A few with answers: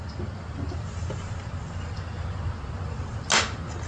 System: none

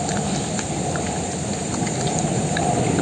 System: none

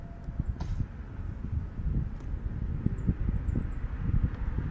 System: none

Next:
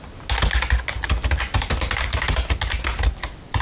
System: none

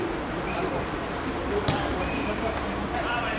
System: vocoder, BigVGAN v2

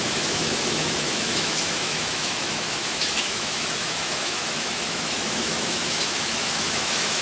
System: autoencoder, DAC-VAE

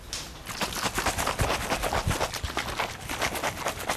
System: none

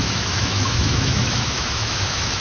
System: autoencoder, DAC-VAE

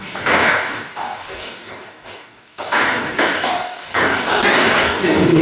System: codec, DAC